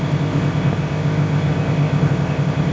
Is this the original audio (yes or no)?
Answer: no